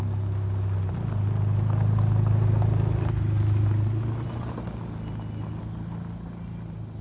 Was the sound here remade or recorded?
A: recorded